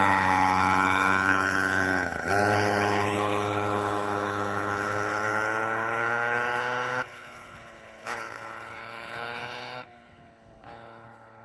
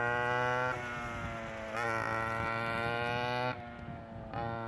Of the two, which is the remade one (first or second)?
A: first